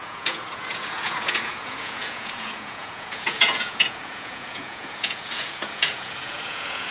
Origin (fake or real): fake